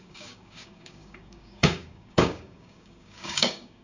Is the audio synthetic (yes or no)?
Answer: yes